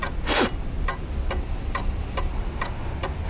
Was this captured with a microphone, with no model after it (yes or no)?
yes